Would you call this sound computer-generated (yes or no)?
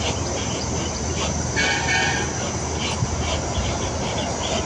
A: no